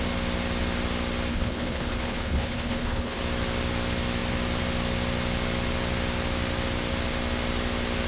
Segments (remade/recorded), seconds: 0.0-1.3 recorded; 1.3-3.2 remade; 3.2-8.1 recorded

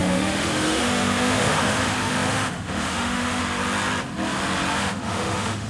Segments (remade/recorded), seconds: 0.0-3.4 remade; 3.4-4.8 recorded; 4.8-5.7 remade

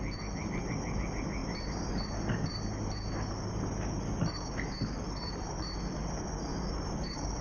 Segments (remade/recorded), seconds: 0.0-1.4 recorded; 1.4-1.9 remade; 1.9-6.5 recorded; 6.5-7.0 remade; 7.0-7.4 recorded

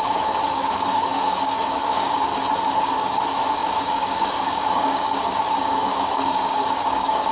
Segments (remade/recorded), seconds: 0.0-2.3 remade; 2.3-2.8 recorded; 2.8-7.3 remade

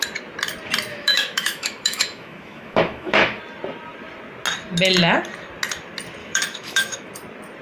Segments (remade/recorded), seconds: 0.0-0.9 recorded; 0.9-3.4 remade; 3.4-6.2 recorded; 6.2-7.1 remade; 7.1-7.6 recorded